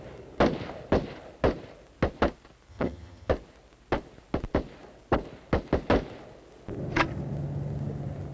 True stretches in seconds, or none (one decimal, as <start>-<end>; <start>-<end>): 0.0-2.7; 3.3-8.3